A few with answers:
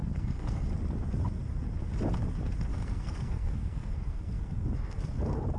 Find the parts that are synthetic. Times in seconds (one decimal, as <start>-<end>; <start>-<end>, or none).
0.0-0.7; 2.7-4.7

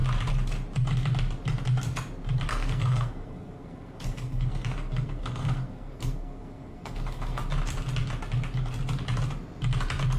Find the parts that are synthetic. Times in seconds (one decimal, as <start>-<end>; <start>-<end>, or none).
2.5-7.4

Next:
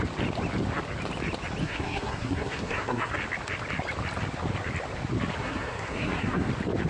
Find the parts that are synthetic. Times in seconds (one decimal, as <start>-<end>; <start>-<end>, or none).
1.6-3.1; 5.4-6.5

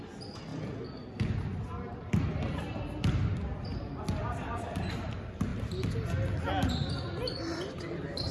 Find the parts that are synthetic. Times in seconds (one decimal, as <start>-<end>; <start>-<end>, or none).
none

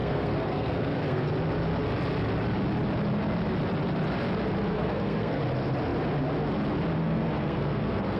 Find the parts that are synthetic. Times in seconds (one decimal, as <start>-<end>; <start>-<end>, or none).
0.0-1.3; 4.7-5.4; 7.0-8.2

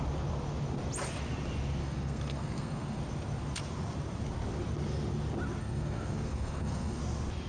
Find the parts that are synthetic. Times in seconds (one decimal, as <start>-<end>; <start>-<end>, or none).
1.8-3.0; 5.6-7.0